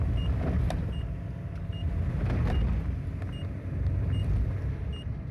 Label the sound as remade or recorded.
recorded